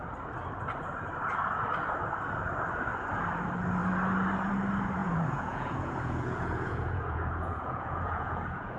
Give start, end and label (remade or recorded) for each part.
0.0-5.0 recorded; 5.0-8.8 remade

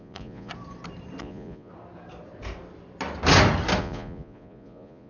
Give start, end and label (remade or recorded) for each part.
0.0-0.5 remade; 0.5-1.2 recorded; 1.2-1.7 remade; 1.7-3.8 recorded; 3.8-5.1 remade

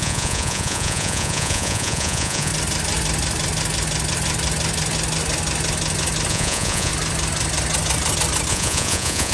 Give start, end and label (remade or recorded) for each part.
0.0-2.5 remade; 2.5-6.3 recorded; 6.3-6.9 remade; 6.9-8.5 recorded; 8.5-9.3 remade